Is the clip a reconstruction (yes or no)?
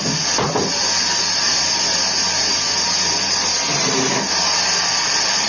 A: no